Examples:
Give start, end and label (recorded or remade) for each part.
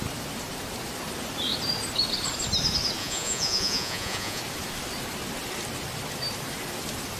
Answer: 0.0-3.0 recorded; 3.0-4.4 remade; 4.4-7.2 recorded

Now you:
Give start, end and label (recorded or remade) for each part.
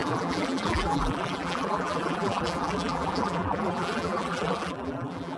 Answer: 0.0-5.4 remade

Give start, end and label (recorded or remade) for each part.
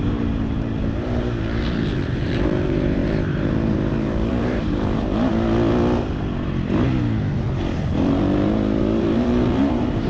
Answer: 0.0-5.3 remade; 5.3-8.8 recorded; 8.8-10.1 remade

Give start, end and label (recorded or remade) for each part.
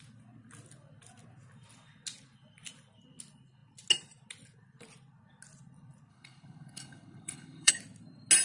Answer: 0.0-6.1 recorded; 6.1-7.7 remade; 7.7-8.4 recorded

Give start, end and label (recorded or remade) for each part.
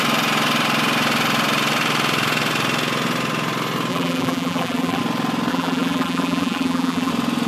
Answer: 0.0-3.9 recorded; 3.9-5.0 remade; 5.0-5.5 recorded; 5.5-7.1 remade; 7.1-7.5 recorded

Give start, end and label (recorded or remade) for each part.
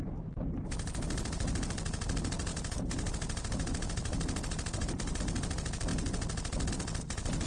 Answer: 0.0-2.5 recorded; 2.5-5.2 remade; 5.2-7.5 recorded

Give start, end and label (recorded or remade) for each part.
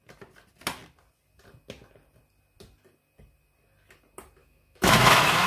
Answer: 0.0-4.4 recorded; 4.4-5.5 remade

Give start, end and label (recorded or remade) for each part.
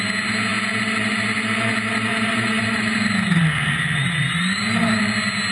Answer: 0.0-2.1 recorded; 2.1-2.9 remade; 2.9-4.0 recorded; 4.0-4.8 remade; 4.8-5.5 recorded